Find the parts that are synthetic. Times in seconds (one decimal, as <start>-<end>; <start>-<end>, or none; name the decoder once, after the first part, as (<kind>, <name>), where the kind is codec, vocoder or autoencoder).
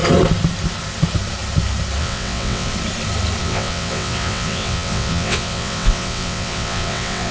2.0-2.7 (vocoder, WaveNeXt); 3.4-7.3